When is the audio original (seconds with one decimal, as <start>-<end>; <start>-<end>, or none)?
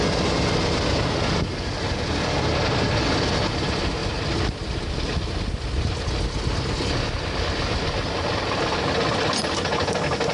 0.0-10.3